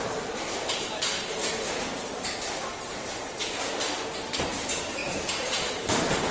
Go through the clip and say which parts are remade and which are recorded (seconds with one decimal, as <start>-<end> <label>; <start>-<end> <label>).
0.0-2.6 recorded; 2.6-3.7 remade; 3.7-5.0 recorded; 5.0-5.5 remade; 5.5-6.3 recorded